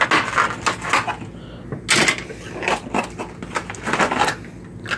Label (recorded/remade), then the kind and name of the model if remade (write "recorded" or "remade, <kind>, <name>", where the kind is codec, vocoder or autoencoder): recorded